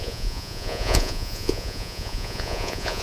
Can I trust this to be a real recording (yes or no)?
no